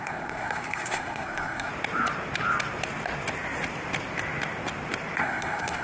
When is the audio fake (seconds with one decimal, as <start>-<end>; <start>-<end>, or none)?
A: 0.0-1.7; 5.2-5.8